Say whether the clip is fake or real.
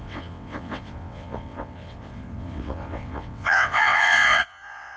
fake